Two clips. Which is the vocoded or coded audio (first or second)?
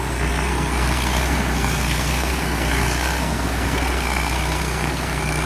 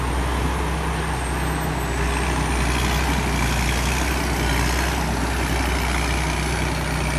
first